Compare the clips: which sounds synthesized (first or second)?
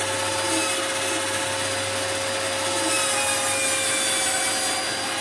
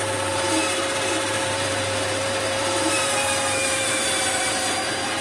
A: second